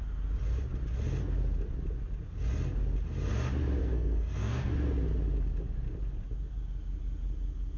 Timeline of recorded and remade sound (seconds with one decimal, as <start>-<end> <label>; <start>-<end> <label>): 0.0-3.8 recorded; 3.8-4.7 remade; 4.7-7.8 recorded